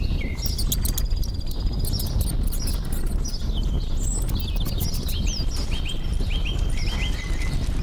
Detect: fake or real real